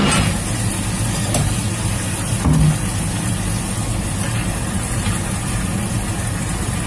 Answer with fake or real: real